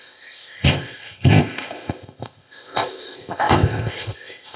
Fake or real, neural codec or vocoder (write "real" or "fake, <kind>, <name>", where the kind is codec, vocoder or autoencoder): fake, codec, ZipCodec